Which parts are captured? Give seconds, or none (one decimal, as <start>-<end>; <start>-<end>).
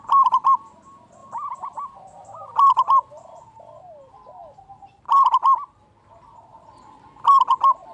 0.0-1.2; 2.7-7.9